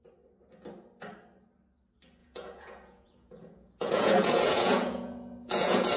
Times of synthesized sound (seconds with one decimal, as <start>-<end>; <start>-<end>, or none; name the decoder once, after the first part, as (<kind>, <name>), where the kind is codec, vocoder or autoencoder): 2.2-6.0 (vocoder, Vocos)